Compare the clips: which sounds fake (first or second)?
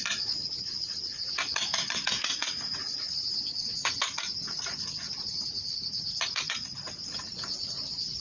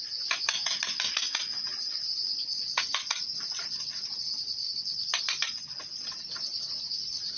first